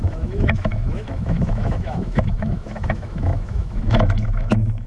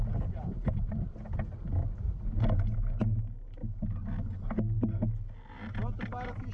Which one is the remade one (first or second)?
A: first